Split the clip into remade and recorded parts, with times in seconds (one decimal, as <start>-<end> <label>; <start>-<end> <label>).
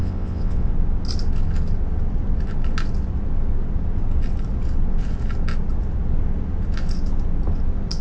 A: 0.0-0.7 remade; 0.7-8.0 recorded